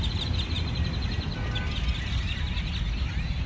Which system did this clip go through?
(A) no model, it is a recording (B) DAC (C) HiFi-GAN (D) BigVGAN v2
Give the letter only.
A